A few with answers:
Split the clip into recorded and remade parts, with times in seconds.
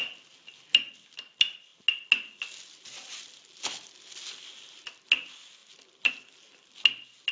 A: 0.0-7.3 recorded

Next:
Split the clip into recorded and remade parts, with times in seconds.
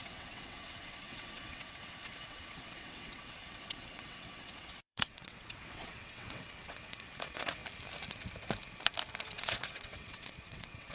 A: 0.0-7.6 remade; 7.6-9.2 recorded; 9.2-10.9 remade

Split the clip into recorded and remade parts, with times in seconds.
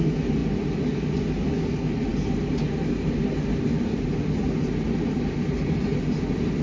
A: 0.0-6.6 recorded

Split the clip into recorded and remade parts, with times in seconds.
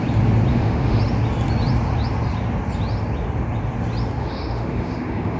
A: 0.0-0.5 recorded; 0.5-1.0 remade; 1.0-4.2 recorded; 4.2-5.4 remade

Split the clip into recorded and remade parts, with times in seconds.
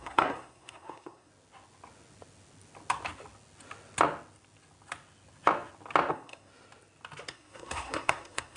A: 0.0-1.3 remade; 1.3-6.1 recorded; 6.1-6.5 remade; 6.5-7.3 recorded; 7.3-8.6 remade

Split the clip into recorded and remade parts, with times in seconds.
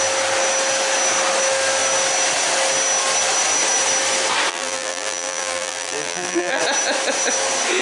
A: 0.0-4.5 recorded; 4.5-6.6 remade; 6.6-7.8 recorded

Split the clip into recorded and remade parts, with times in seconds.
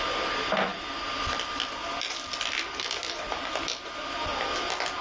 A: 0.0-5.0 recorded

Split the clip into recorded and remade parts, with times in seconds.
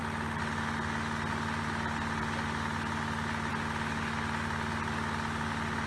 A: 0.0-5.9 recorded